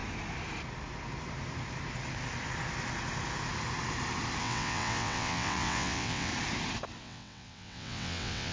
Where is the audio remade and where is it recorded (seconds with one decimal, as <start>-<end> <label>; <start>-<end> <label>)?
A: 0.0-4.4 recorded; 4.4-6.3 remade; 6.3-7.0 recorded; 7.0-8.5 remade